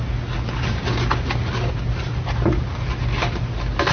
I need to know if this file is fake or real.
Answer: real